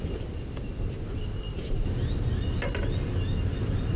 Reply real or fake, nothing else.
real